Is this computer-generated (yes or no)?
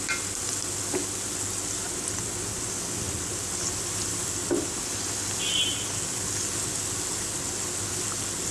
no